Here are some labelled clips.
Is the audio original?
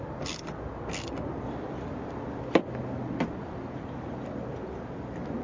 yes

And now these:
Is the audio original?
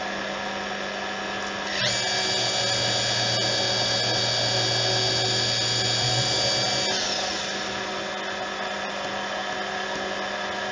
yes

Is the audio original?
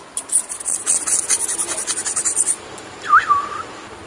yes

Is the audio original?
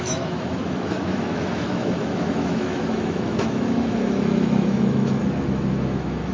no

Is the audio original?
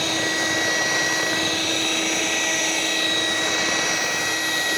yes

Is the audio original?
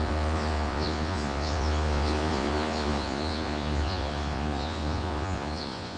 no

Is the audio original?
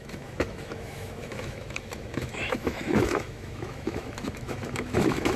no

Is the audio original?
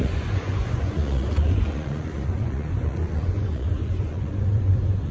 no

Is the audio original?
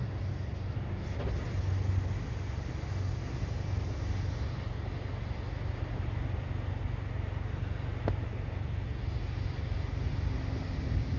yes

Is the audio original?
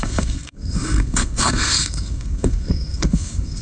no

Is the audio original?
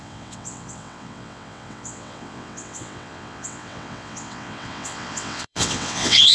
no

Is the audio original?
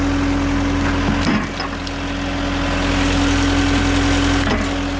yes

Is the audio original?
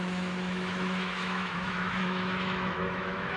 no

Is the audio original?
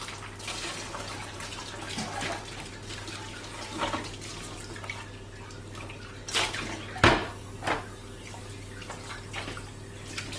yes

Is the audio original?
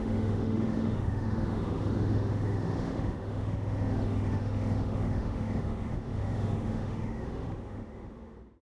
no